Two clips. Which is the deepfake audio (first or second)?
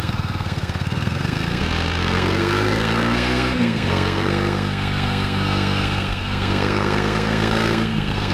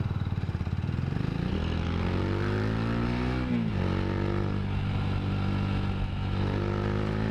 first